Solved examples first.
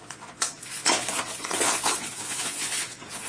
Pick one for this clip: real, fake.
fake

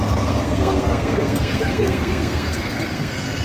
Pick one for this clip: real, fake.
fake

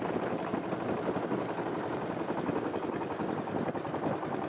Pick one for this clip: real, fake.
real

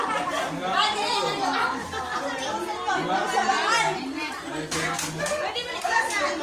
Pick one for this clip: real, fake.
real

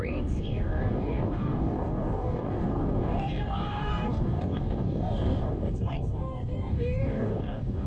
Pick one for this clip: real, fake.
fake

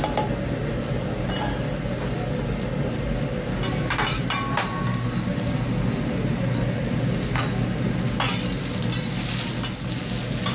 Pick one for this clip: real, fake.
real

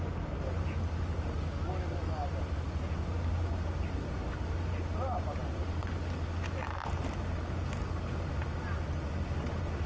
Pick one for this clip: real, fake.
real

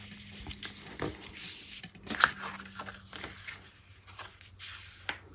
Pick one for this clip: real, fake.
real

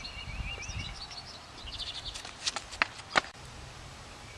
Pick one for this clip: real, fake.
real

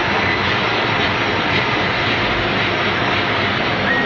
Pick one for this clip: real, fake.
real